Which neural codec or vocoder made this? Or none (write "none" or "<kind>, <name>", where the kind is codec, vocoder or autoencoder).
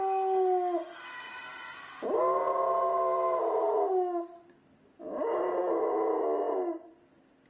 none